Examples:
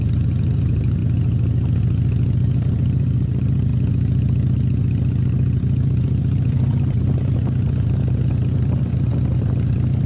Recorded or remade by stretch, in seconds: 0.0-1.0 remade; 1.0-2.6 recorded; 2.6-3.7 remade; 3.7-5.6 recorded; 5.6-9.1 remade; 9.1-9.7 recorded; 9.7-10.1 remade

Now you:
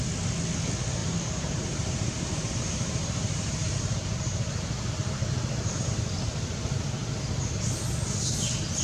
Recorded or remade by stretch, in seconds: 0.0-1.0 recorded; 1.0-5.9 remade; 5.9-8.8 recorded

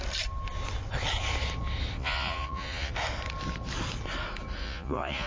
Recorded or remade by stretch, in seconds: 0.0-2.0 recorded; 2.0-2.9 remade; 2.9-4.6 recorded; 4.6-5.3 remade

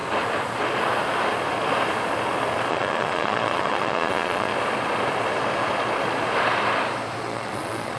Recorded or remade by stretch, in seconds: 0.0-2.7 recorded; 2.7-4.5 remade; 4.5-7.2 recorded; 7.2-8.0 remade

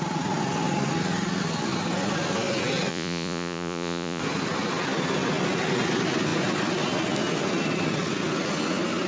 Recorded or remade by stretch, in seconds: 0.0-2.9 recorded; 2.9-4.2 remade; 4.2-9.1 recorded

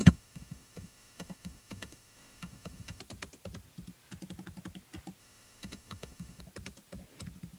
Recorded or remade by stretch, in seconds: 0.0-3.0 remade; 3.0-5.2 recorded; 5.2-6.4 remade; 6.4-7.6 recorded